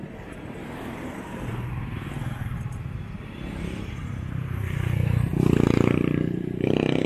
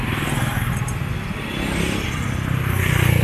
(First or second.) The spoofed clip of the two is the first